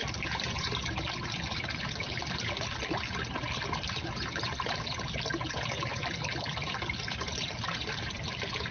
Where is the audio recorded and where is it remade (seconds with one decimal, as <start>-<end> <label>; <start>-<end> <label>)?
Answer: 0.0-8.7 recorded